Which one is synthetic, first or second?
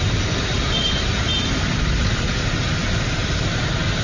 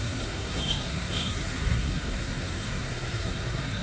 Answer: second